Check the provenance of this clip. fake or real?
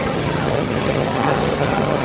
fake